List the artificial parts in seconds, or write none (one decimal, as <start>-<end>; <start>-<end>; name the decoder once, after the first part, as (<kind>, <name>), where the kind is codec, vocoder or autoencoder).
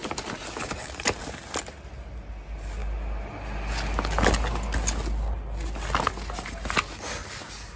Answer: none